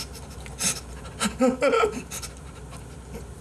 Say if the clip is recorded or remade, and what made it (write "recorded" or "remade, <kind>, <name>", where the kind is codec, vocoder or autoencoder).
recorded